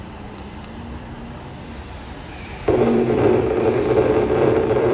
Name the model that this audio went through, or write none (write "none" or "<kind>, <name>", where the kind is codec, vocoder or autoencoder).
vocoder, BigVGAN v2